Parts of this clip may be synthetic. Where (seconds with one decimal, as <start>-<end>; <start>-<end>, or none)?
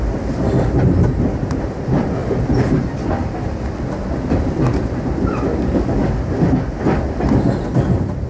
5.5-6.2